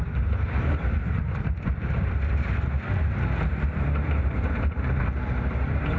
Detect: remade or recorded remade